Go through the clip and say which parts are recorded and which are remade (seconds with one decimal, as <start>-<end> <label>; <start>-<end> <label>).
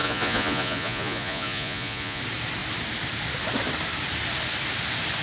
0.0-2.2 remade; 2.2-5.2 recorded